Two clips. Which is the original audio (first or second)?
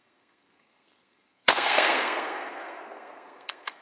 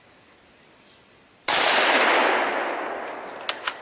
second